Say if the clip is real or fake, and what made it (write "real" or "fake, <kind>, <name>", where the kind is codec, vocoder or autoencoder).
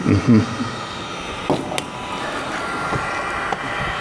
real